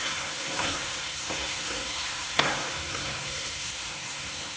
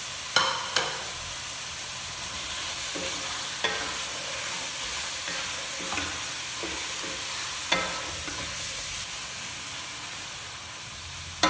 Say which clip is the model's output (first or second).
first